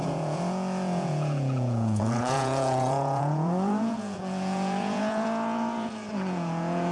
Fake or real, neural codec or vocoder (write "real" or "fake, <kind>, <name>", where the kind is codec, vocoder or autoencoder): fake, vocoder, Vocos